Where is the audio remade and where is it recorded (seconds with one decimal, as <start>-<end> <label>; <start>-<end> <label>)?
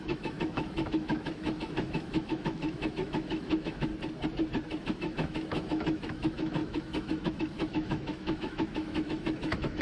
0.0-3.9 remade; 3.9-4.8 recorded; 4.8-9.8 remade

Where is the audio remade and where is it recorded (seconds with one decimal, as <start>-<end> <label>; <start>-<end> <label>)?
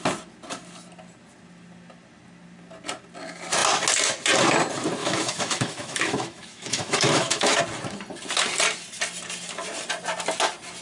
0.0-5.0 recorded; 5.0-7.6 remade; 7.6-10.8 recorded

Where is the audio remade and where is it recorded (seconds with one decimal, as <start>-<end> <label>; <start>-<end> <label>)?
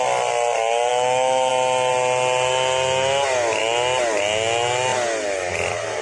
0.0-0.9 recorded; 0.9-1.5 remade; 1.5-6.0 recorded